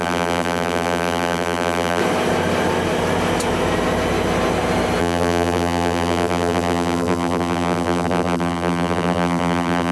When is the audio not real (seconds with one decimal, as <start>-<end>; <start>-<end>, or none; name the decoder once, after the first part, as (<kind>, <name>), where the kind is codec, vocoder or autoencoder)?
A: 0.0-2.0 (vocoder, BigVGAN v2); 5.0-9.9